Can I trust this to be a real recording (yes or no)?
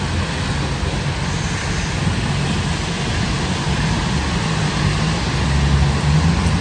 yes